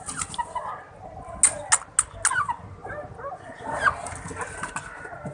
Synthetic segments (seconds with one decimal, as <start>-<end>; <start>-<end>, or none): none